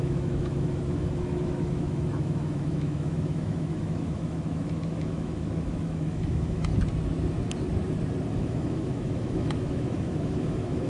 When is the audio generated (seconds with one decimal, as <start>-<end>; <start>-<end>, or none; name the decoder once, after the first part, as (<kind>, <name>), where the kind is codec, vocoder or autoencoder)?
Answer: 0.0-6.7 (autoencoder, DAC-VAE); 8.3-10.9